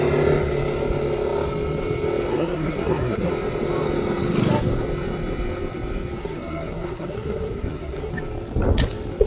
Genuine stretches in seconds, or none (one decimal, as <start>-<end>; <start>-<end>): 0.0-2.3; 3.3-6.2; 8.1-9.3

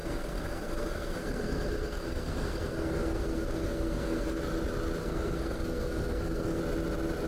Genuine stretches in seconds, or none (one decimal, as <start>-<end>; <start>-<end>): 4.4-5.0; 6.6-7.3

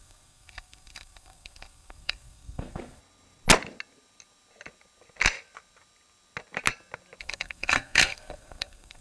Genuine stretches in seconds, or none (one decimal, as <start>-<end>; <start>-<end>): 3.0-7.2

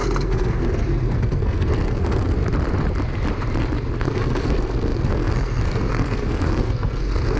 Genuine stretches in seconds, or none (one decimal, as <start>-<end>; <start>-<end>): 2.4-4.0

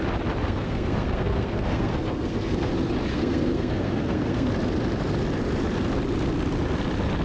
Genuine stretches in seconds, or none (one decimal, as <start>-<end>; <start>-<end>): 0.0-0.4; 2.7-3.1; 4.5-7.2